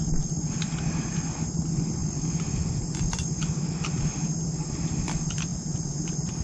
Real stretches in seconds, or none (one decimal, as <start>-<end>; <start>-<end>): 0.0-2.0; 2.7-6.4